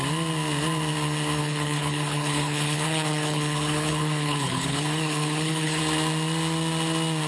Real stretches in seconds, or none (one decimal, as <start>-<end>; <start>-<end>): 0.0-1.4; 5.8-7.3